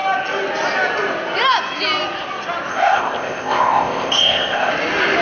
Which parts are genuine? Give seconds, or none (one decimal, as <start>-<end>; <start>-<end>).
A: 0.0-2.7; 4.7-5.2